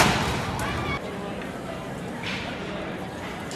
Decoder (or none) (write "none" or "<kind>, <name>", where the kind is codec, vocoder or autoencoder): none